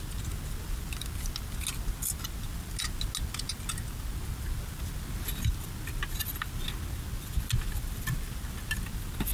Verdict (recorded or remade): recorded